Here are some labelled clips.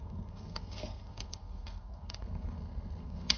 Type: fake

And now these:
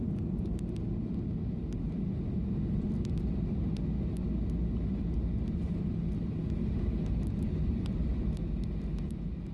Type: real